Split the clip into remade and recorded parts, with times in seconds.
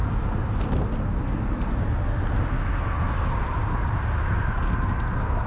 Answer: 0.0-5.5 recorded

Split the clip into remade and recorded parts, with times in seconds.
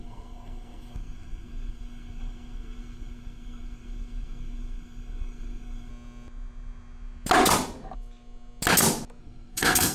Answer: 0.0-5.9 remade; 5.9-9.2 recorded; 9.2-9.9 remade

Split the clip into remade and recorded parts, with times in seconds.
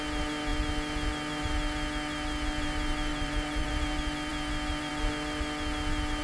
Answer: 0.0-3.1 recorded; 3.1-3.7 remade; 3.7-6.2 recorded